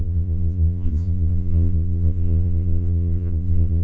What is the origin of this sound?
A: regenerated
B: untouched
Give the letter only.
A